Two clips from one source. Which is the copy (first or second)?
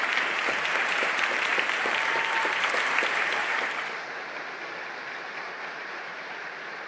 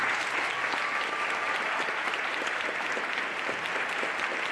first